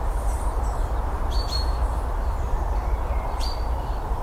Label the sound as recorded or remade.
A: remade